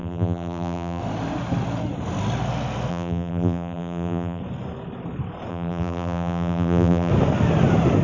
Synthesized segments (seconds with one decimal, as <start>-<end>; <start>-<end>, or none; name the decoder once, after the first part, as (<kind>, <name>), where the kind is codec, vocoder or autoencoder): 0.0-1.0 (vocoder, BigVGAN v2); 2.9-4.4; 5.5-7.1